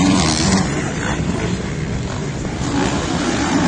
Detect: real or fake fake